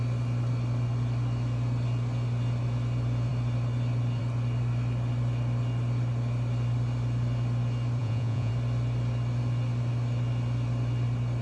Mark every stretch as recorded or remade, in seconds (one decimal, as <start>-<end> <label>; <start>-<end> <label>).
0.0-8.0 recorded; 8.0-8.5 remade; 8.5-11.4 recorded